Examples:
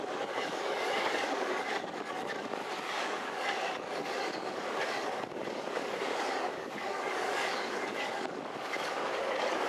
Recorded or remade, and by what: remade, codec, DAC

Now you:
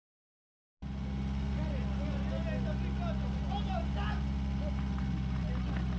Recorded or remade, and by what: recorded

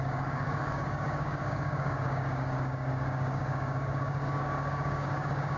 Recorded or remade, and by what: remade, codec, DAC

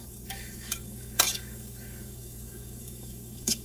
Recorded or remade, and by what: remade, codec, DAC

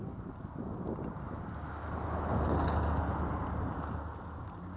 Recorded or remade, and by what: recorded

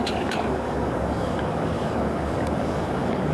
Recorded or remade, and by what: remade, codec, DAC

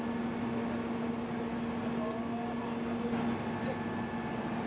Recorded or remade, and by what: recorded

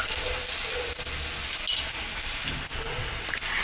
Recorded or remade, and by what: recorded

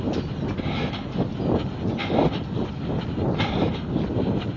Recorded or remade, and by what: recorded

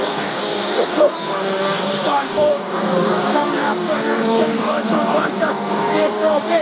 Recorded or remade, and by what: remade, codec, DAC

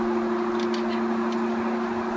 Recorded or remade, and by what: recorded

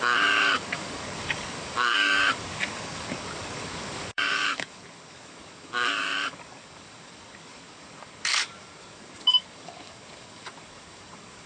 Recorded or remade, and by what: remade, codec, DAC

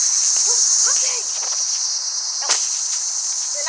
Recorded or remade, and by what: recorded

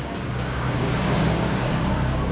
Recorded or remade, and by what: remade, codec, DAC